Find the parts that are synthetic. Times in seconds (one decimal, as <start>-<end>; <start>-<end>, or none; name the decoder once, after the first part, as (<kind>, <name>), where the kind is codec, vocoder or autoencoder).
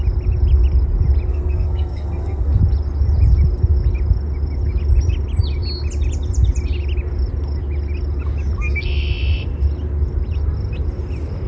1.3-2.6 (codec, SNAC)